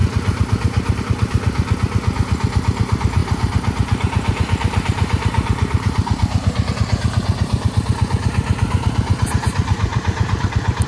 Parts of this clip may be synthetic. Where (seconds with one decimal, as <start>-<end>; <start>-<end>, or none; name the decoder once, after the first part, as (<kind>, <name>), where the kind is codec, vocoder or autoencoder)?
3.2-6.7 (vocoder, BigVGAN v2); 9.9-10.4